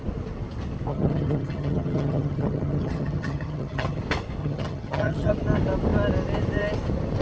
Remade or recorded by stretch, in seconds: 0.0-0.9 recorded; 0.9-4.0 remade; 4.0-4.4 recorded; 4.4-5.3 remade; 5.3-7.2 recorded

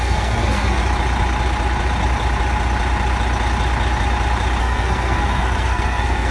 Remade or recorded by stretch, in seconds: 0.0-0.8 remade; 0.8-4.6 recorded; 4.6-6.3 remade

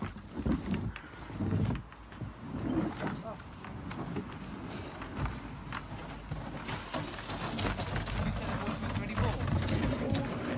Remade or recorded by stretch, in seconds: 0.0-10.6 recorded

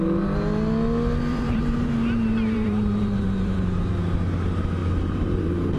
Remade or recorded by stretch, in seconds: 0.0-1.3 recorded; 1.3-3.9 remade; 3.9-4.8 recorded; 4.8-5.8 remade

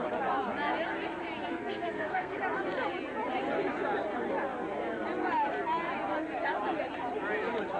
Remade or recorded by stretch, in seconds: 0.0-1.5 recorded; 1.5-2.4 remade; 2.4-7.8 recorded

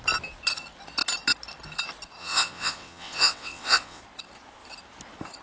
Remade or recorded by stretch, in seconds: 0.0-2.2 recorded; 2.2-4.0 remade; 4.0-5.4 recorded

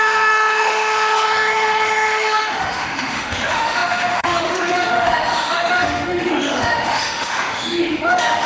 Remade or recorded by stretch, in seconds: 0.0-8.5 remade